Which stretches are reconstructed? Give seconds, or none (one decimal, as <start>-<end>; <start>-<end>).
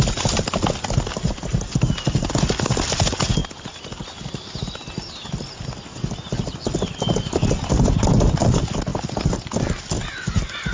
none